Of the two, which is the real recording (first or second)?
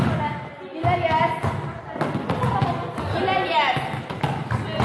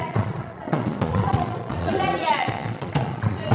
first